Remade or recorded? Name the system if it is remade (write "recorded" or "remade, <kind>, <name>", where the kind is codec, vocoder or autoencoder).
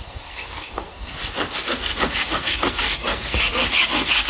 remade, codec, SNAC